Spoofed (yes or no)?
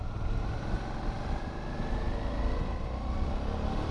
yes